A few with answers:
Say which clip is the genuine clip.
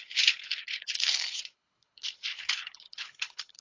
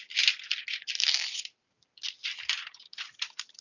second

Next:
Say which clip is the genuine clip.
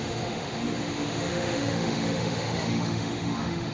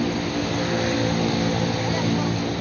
second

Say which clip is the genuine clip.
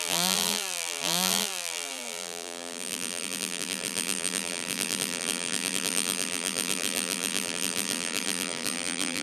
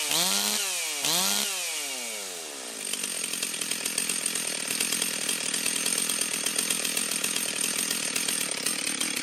second